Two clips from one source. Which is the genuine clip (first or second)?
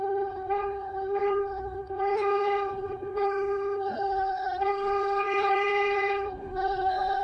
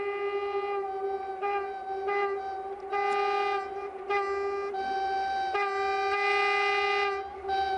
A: second